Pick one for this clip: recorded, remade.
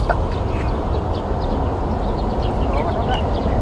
recorded